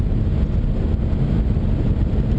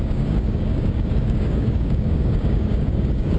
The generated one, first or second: second